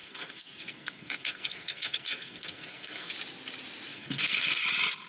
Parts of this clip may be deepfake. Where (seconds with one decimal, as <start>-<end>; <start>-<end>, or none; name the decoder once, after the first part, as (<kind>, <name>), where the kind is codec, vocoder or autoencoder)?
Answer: 0.0-3.1 (codec, SNAC); 3.9-4.6